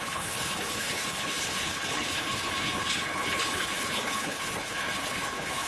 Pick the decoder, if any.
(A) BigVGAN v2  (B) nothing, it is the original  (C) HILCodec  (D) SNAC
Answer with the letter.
C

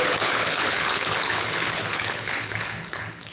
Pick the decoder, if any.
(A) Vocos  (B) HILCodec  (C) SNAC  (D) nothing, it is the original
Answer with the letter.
B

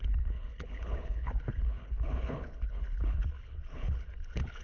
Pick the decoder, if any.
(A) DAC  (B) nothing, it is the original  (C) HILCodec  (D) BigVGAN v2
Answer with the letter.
C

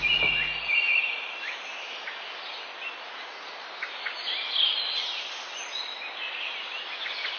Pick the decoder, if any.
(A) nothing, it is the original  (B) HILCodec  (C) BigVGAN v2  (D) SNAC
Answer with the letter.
A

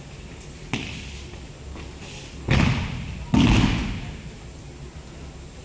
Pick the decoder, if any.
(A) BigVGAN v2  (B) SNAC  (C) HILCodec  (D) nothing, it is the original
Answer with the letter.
D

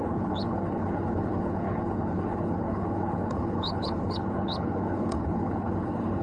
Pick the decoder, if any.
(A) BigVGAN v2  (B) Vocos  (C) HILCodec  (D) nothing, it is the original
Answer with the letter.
C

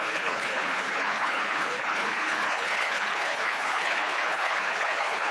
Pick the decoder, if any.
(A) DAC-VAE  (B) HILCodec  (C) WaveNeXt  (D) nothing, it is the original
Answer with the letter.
B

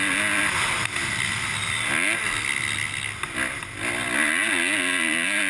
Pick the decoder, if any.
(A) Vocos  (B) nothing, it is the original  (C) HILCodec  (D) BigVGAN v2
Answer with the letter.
B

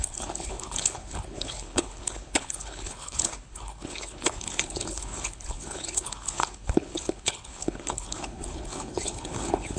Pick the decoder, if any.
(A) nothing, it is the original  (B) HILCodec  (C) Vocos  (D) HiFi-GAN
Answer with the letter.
B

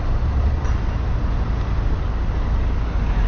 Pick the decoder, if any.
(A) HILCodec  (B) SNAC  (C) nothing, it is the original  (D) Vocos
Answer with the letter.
C